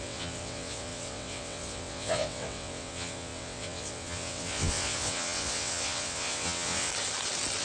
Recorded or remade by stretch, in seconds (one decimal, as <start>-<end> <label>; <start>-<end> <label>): 0.0-6.9 remade; 6.9-7.6 recorded